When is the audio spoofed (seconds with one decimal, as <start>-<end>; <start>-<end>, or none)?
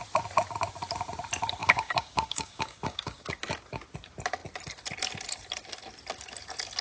1.6-3.4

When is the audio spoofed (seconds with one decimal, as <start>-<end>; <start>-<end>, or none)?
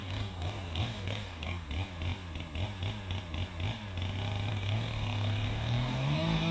0.0-1.7; 4.5-6.5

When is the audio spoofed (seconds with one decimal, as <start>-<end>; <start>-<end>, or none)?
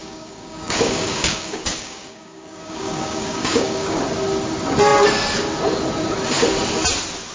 0.0-4.0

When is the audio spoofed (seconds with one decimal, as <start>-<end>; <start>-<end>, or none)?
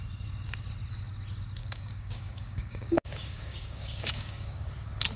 1.6-4.7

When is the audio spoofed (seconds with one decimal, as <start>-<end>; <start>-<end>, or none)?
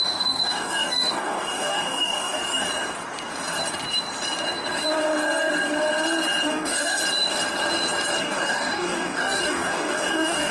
0.0-2.7; 6.5-7.0; 8.2-10.5